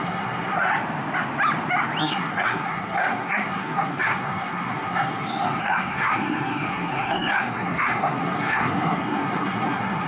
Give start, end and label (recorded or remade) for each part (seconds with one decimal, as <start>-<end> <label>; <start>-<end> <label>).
0.0-0.7 remade; 0.7-2.0 recorded; 2.0-10.1 remade